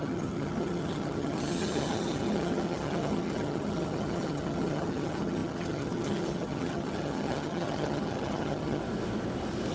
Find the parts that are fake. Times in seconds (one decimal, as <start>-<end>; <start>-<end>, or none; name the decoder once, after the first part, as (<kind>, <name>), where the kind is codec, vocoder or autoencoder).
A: 0.0-8.8 (vocoder, HiFi-GAN)